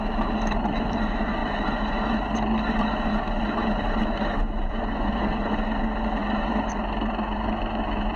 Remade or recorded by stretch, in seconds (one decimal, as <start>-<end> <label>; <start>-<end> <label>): 0.0-8.2 remade